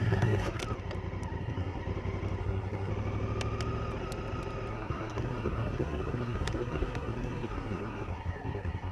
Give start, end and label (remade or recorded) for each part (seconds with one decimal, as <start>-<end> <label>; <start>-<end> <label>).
0.0-0.6 remade; 0.6-1.4 recorded; 1.4-1.8 remade; 1.8-2.4 recorded; 2.4-2.9 remade; 2.9-4.7 recorded; 4.7-8.9 remade